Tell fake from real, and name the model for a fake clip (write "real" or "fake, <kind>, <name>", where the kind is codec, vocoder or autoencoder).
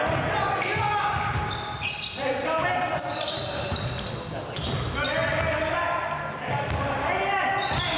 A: real